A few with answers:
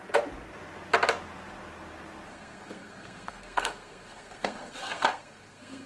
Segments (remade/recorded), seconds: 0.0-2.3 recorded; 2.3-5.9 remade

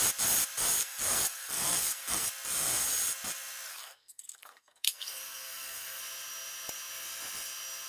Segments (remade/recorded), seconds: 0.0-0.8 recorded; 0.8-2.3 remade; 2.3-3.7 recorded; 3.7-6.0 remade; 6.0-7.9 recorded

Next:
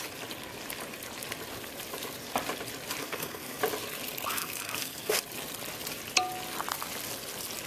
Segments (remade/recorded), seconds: 0.0-3.0 recorded; 3.0-3.6 remade; 3.6-4.3 recorded; 4.3-5.2 remade; 5.2-7.7 recorded